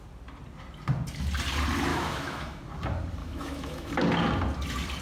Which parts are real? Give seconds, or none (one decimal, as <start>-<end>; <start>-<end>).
0.0-1.9; 2.6-3.2; 3.9-5.0